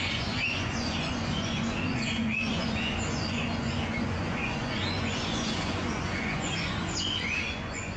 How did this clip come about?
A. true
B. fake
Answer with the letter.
B